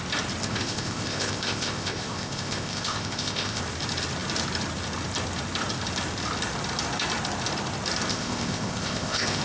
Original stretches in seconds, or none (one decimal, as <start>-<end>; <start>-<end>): 0.0-0.4; 3.6-8.1